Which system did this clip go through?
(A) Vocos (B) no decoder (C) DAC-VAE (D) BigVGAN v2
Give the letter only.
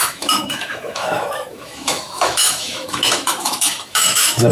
C